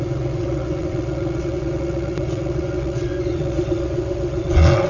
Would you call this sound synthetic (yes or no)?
yes